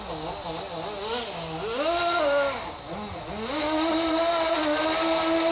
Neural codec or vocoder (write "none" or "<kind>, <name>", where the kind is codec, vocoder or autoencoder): none